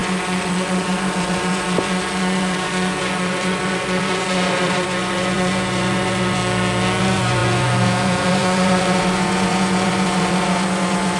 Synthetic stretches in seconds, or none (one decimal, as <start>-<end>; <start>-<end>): 0.0-6.4; 7.0-11.2